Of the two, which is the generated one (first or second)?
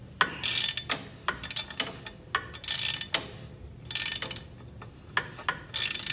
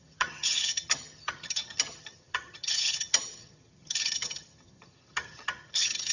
second